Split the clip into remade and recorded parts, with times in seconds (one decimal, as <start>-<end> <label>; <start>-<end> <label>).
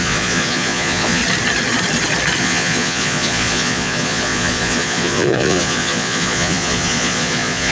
0.0-1.2 remade; 1.2-2.4 recorded; 2.4-7.7 remade